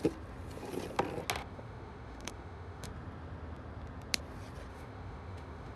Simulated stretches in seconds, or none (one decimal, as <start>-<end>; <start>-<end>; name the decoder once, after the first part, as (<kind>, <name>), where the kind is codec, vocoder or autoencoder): 1.4-2.9 (autoencoder, DAC-VAE); 4.7-5.8

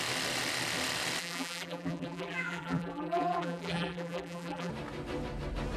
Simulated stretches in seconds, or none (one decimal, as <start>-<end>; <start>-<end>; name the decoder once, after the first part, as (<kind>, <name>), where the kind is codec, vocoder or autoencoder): 1.2-4.7 (vocoder, BigVGAN v2)